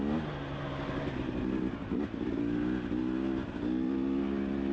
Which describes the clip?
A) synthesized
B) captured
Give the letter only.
B